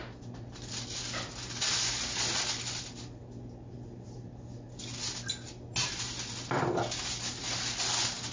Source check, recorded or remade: recorded